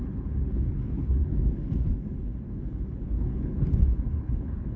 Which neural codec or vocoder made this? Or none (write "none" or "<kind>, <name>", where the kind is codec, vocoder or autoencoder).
codec, HILCodec